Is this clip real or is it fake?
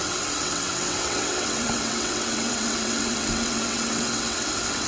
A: fake